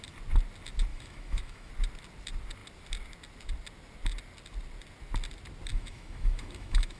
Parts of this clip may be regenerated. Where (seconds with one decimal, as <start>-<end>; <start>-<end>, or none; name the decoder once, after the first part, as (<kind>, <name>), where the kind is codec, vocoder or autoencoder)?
0.9-1.7 (autoencoder, DAC-VAE); 5.7-7.0